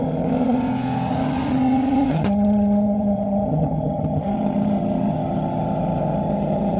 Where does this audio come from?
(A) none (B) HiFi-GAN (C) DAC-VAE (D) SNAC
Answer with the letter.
B